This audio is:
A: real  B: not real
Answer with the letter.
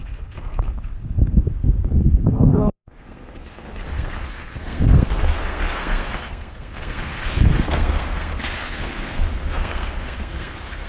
B